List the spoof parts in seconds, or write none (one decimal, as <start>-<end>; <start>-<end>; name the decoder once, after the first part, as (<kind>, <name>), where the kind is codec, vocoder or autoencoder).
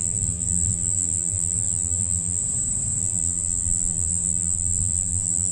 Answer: 0.0-2.4 (vocoder, BigVGAN v2); 3.0-5.5